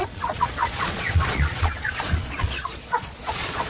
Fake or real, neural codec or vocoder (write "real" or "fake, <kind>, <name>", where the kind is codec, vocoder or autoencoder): fake, vocoder, Vocos